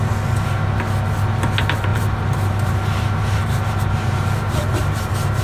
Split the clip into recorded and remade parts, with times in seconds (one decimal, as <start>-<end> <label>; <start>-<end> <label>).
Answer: 0.0-1.9 recorded; 1.9-5.0 remade; 5.0-5.4 recorded